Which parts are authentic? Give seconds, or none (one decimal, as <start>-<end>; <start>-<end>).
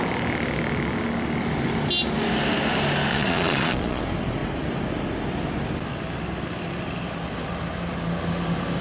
0.0-3.1; 4.0-8.8